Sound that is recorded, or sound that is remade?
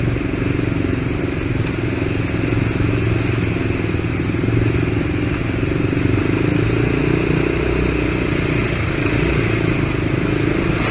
recorded